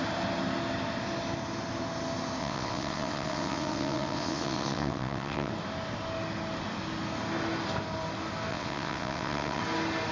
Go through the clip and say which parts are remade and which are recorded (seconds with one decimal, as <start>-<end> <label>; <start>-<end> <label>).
0.0-2.4 recorded; 2.4-5.5 remade; 5.5-8.5 recorded; 8.5-9.6 remade; 9.6-10.1 recorded